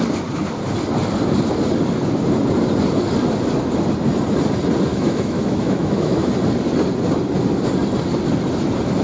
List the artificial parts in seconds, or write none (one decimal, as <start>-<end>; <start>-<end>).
4.9-6.3